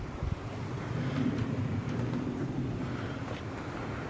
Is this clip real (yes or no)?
yes